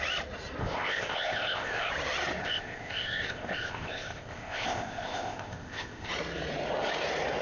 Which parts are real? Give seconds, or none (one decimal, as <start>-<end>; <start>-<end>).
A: 0.0-0.6; 1.9-2.4; 6.1-7.4